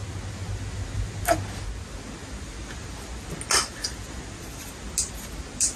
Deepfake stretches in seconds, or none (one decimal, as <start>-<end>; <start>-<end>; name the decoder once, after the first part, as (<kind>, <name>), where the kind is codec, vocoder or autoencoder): none